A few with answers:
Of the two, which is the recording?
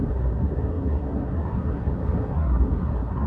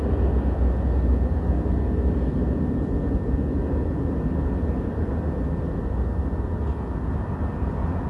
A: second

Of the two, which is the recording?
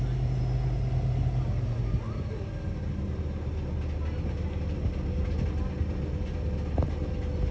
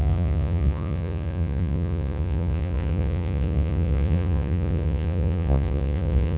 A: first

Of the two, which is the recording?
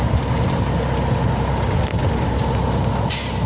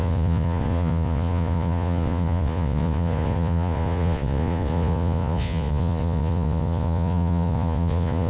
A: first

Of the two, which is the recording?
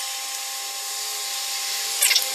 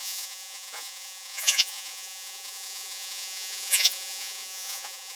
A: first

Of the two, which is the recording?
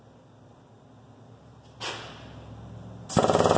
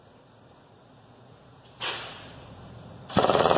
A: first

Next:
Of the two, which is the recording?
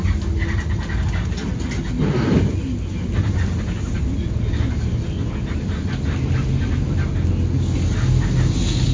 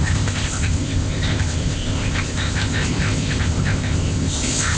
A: first